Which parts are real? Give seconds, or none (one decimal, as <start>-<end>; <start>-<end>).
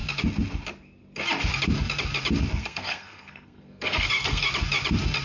0.0-2.6; 4.5-5.2